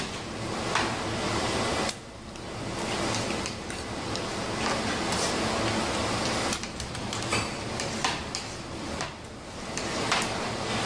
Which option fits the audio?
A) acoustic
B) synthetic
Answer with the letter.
A